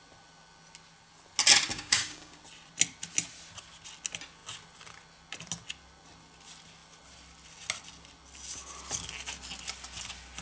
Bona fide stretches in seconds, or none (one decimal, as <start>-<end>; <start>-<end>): 0.0-1.7; 2.4-10.4